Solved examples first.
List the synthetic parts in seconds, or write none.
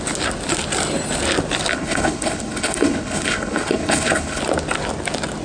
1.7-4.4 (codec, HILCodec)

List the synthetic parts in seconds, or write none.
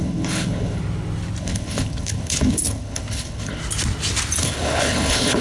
0.0-0.8 (codec, HILCodec); 1.4-3.6; 4.4-5.4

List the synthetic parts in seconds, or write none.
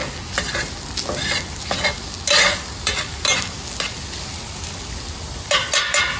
none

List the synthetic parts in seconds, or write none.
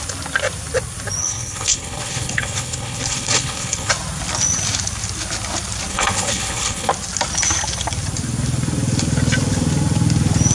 1.2-3.9 (codec, HILCodec); 5.9-6.9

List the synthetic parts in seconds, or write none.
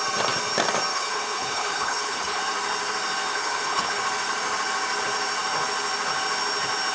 0.9-2.4 (codec, HILCodec); 3.3-4.0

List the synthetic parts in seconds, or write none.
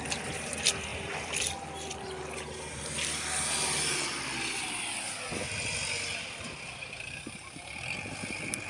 none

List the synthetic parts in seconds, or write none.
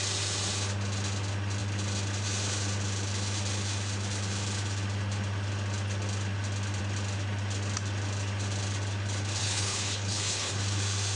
9.4-10.5 (codec, HILCodec)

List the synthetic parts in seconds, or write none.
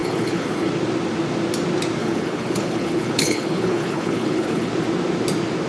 0.0-0.7 (codec, HILCodec); 2.0-4.7